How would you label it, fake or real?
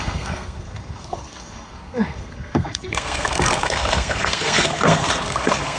fake